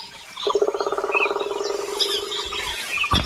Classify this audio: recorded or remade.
recorded